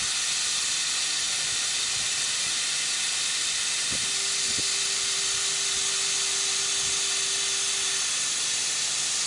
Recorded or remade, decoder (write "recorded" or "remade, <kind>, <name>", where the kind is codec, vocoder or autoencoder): recorded